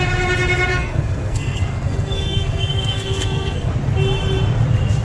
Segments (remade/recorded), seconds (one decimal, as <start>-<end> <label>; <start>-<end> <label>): 0.0-0.7 recorded; 0.7-3.7 remade; 3.7-5.0 recorded